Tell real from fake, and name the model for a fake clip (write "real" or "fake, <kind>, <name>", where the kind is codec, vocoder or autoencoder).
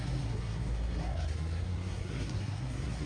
fake, codec, SNAC